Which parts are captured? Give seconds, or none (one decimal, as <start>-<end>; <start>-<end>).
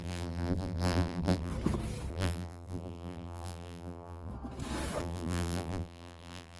1.5-2.1; 4.3-5.0